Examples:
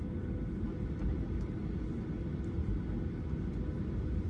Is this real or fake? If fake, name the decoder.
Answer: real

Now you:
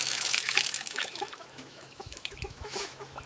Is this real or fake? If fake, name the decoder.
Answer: fake, autoencoder, DAC-VAE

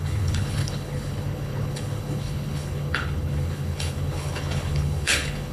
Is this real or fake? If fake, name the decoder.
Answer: fake, codec, HILCodec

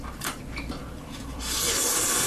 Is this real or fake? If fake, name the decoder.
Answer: fake, vocoder, BigVGAN v2